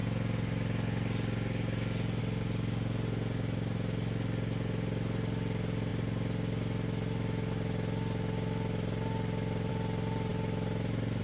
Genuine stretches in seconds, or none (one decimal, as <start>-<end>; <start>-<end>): 0.0-11.2